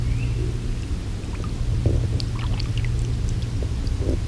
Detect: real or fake real